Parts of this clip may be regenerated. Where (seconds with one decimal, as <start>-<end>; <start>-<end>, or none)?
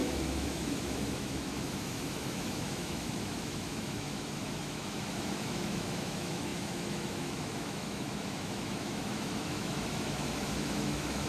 0.0-11.3